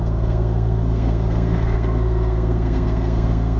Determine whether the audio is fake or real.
fake